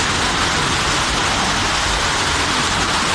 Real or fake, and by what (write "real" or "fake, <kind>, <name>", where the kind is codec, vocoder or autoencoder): real